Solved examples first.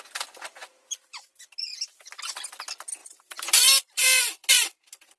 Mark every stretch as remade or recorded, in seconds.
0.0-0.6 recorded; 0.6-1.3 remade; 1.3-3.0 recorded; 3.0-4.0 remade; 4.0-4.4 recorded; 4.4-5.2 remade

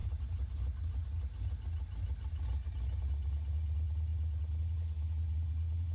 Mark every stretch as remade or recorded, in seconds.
0.0-5.9 recorded